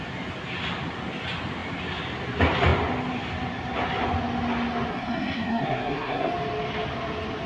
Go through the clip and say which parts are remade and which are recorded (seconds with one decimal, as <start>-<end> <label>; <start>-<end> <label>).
0.0-4.9 recorded; 4.9-6.3 remade; 6.3-7.5 recorded